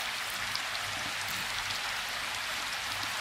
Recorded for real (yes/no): yes